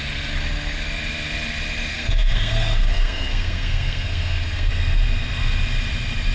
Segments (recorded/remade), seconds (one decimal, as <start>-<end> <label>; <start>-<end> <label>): 0.0-1.9 recorded; 1.9-4.7 remade; 4.7-6.3 recorded